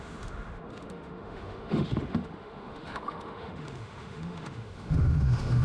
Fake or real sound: fake